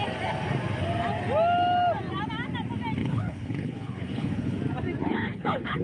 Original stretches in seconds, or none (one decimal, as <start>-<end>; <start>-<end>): 0.0-3.0; 4.6-5.0

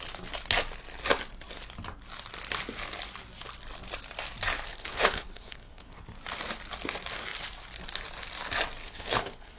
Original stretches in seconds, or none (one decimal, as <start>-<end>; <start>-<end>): 0.0-4.7; 6.0-8.8